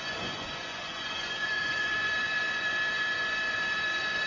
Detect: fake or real fake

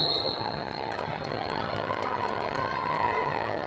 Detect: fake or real fake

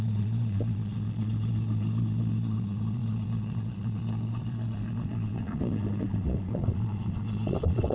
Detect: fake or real fake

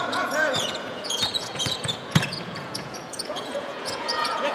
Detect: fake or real fake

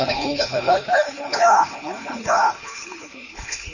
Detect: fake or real fake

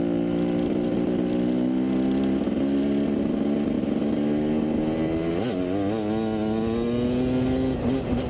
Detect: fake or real real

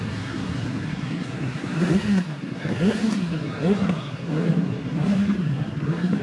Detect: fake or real fake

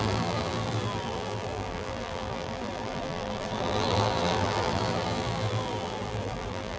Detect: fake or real fake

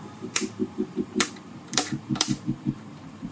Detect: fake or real fake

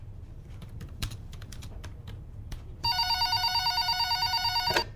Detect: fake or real fake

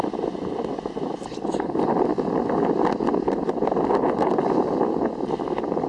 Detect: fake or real real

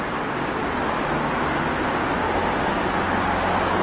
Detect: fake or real real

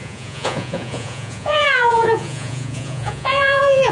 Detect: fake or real fake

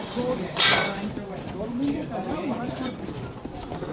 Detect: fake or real real